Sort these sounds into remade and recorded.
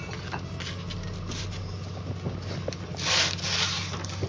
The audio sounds recorded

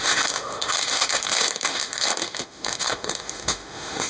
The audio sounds remade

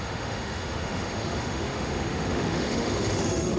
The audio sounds remade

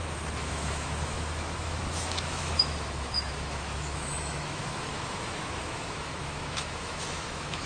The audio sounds remade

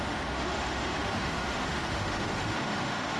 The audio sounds remade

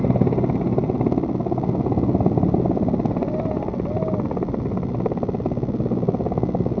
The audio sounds recorded